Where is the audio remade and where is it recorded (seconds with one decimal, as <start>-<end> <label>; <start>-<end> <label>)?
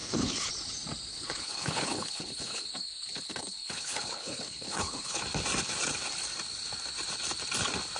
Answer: 0.0-0.5 remade; 0.5-1.1 recorded; 1.1-5.2 remade; 5.2-8.0 recorded